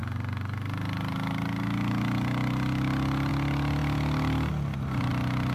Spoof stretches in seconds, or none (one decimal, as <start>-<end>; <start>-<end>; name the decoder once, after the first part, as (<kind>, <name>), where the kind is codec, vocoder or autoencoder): none